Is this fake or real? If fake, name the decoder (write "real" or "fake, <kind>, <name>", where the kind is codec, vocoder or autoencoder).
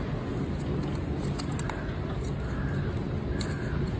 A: real